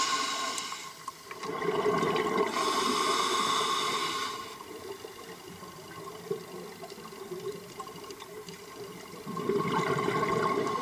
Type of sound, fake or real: real